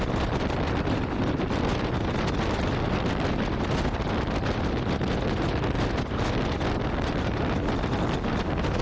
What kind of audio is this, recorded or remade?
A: recorded